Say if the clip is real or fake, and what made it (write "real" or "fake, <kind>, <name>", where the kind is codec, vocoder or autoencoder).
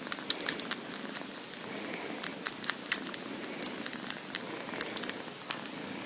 real